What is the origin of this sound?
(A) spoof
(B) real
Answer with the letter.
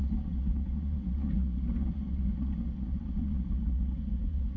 A